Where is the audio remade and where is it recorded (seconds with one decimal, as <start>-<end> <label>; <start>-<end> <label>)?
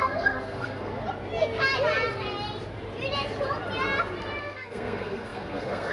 0.0-0.9 remade; 0.9-4.4 recorded; 4.4-5.9 remade